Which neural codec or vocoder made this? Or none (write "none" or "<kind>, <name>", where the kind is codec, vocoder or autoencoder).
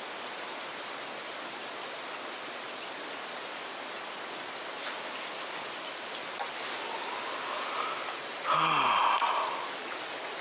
none